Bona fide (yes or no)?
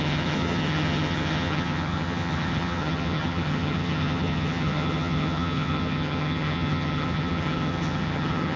no